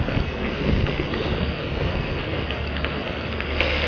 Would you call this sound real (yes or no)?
no